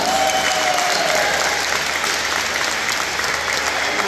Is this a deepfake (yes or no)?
no